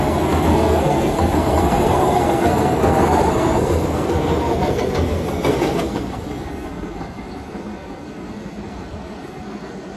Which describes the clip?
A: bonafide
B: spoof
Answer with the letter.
B